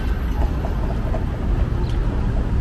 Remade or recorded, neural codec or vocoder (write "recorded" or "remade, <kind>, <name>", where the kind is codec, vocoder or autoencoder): recorded